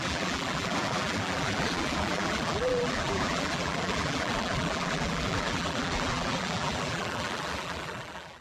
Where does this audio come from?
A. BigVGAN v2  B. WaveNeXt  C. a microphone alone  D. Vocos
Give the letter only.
A